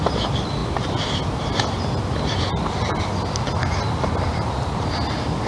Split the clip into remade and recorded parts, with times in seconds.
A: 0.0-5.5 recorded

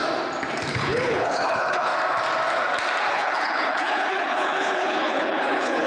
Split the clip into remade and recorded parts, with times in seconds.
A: 0.0-0.7 recorded; 0.7-1.9 remade; 1.9-3.1 recorded; 3.1-5.9 remade

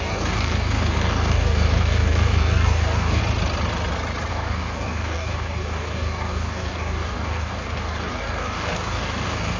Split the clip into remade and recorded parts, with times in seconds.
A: 0.0-3.2 remade; 3.2-4.3 recorded; 4.3-9.6 remade

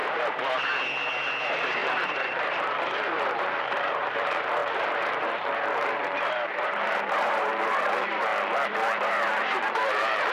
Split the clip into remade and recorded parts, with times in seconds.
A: 0.0-1.4 recorded; 1.4-8.3 remade; 8.3-9.0 recorded; 9.0-10.3 remade

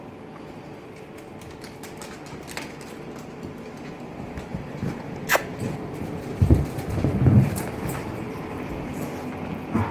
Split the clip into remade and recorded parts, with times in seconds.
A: 0.0-4.7 recorded; 4.7-9.1 remade; 9.1-9.9 recorded

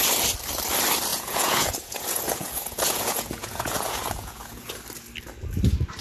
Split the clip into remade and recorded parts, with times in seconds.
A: 0.0-1.1 recorded; 1.1-4.7 remade; 4.7-6.0 recorded

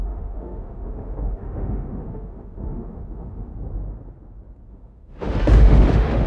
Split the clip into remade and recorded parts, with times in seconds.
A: 0.0-3.5 remade; 3.5-4.7 recorded; 4.7-6.3 remade

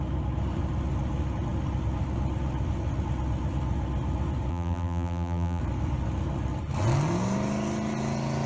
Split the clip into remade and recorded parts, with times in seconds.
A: 0.0-4.5 recorded; 4.5-5.6 remade; 5.6-8.5 recorded